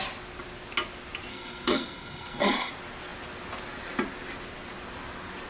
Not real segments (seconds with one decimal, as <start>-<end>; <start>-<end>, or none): 1.3-2.7

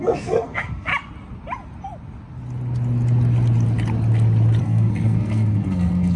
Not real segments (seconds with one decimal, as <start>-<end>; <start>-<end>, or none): 0.0-0.9; 4.6-6.2

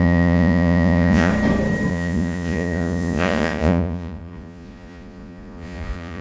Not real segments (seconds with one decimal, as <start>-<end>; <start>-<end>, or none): 0.0-1.3; 1.9-6.2

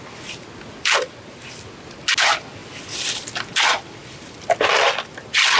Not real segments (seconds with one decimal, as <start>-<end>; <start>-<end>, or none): none

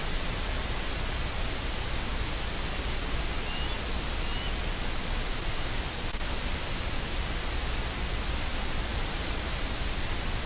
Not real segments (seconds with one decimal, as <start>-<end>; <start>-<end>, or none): 0.0-0.9; 8.9-9.6

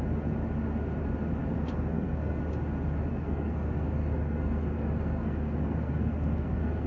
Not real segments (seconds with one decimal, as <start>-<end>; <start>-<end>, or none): 1.4-2.4; 3.1-6.9

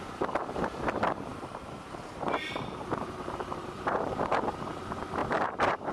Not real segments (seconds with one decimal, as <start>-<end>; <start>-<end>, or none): 1.3-4.8; 5.2-5.9